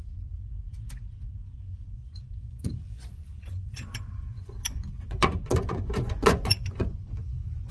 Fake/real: fake